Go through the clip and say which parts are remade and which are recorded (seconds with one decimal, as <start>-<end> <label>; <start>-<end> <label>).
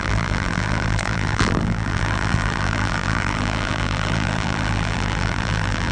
0.0-5.9 remade